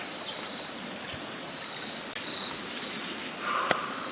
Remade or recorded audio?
recorded